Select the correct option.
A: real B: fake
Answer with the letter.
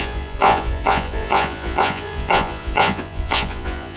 B